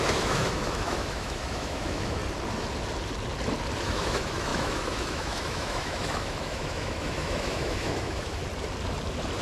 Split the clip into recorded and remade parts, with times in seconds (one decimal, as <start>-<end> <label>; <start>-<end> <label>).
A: 0.0-2.2 remade; 2.2-3.8 recorded; 3.8-8.4 remade; 8.4-9.4 recorded